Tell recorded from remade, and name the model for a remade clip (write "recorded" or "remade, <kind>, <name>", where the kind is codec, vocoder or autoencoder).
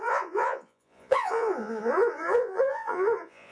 remade, vocoder, Vocos